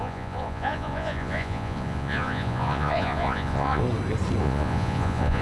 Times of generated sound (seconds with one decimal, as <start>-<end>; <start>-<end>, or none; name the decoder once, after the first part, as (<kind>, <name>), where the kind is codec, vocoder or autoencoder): 0.0-3.8 (vocoder, Vocos); 4.4-5.4